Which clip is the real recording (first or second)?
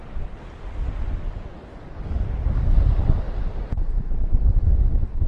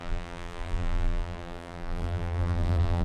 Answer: first